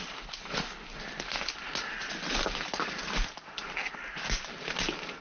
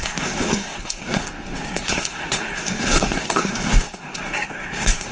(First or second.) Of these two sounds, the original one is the first